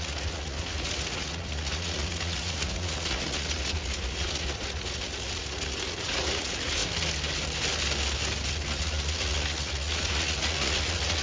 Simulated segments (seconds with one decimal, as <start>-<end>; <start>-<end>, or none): 0.0-6.8; 8.5-11.2